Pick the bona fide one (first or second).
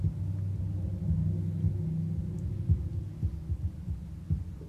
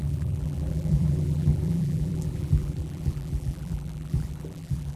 first